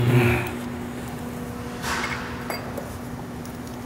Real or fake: real